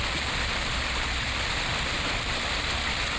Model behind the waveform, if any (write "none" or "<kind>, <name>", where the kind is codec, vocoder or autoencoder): vocoder, BigVGAN v2